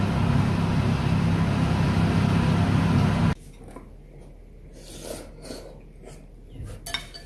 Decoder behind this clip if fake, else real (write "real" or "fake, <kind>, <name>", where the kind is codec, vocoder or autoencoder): real